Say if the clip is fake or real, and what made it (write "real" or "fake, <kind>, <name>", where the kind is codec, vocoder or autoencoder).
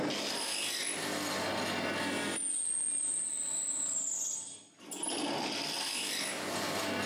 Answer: real